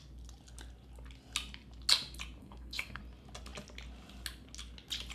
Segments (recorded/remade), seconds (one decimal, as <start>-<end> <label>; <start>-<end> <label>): 0.0-2.4 recorded; 2.4-3.0 remade; 3.0-5.1 recorded